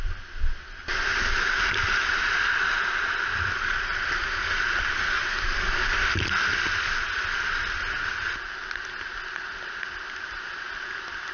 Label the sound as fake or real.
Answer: real